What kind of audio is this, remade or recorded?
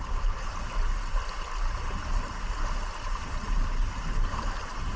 recorded